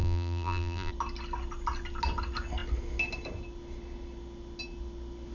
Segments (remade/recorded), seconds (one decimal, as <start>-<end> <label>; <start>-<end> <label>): 0.0-0.9 remade; 0.9-5.3 recorded